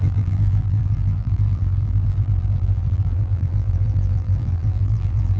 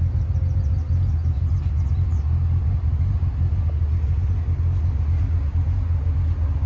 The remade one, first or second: first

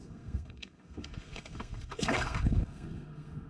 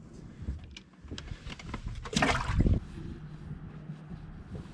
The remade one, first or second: first